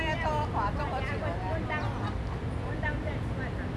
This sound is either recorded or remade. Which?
recorded